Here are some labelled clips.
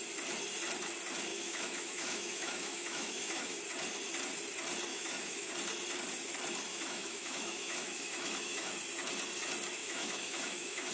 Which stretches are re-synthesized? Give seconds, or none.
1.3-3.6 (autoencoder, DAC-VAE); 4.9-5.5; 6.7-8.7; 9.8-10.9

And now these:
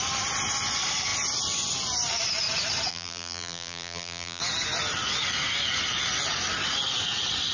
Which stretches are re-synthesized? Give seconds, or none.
2.9-4.4 (vocoder, BigVGAN v2)

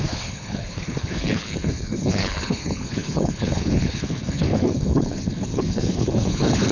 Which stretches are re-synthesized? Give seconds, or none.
0.0-6.7 (codec, HILCodec)